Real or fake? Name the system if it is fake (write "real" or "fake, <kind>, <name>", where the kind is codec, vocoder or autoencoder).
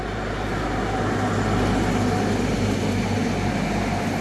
real